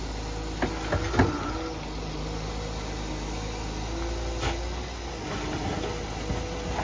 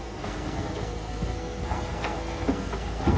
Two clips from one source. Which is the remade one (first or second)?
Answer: second